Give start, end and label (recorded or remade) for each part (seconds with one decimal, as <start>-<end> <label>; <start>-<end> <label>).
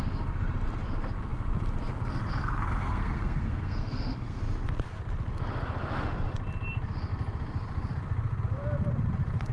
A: 0.0-2.4 recorded; 2.4-4.4 remade; 4.4-9.5 recorded